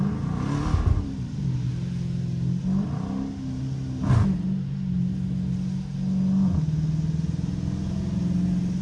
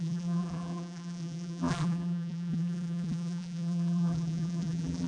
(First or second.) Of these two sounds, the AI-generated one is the second